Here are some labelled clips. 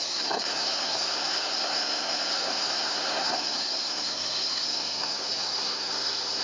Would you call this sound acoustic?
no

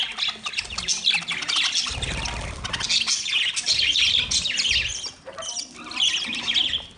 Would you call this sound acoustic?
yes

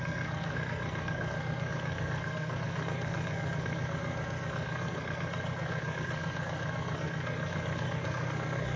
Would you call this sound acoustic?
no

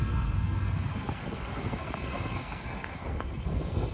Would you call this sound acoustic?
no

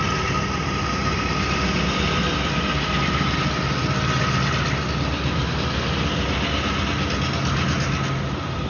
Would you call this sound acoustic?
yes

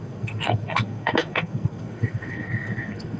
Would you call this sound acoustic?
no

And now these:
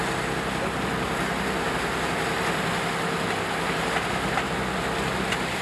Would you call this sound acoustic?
yes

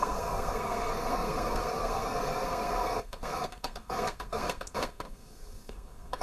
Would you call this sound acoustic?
no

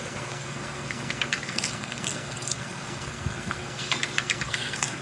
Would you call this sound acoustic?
no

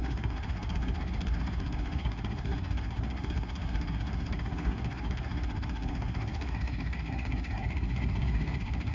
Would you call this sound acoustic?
no